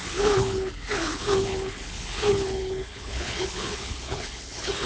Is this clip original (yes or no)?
no